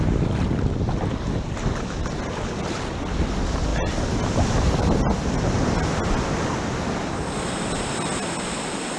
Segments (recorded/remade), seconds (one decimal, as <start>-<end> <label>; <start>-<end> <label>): 0.0-9.0 recorded